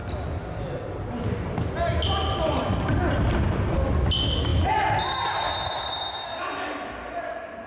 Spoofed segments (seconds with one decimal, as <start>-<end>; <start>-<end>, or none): none